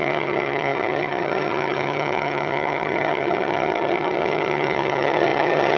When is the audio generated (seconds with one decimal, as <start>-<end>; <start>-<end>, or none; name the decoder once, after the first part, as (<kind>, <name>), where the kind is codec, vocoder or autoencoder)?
0.0-5.8 (vocoder, HiFi-GAN)